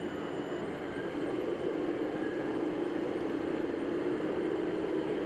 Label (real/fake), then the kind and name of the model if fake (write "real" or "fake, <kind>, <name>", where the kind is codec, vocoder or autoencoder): real